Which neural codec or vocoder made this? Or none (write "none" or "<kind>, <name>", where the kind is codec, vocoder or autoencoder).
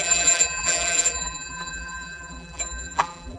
vocoder, BigVGAN v2